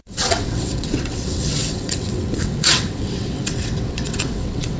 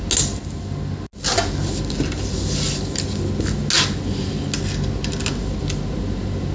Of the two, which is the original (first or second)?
second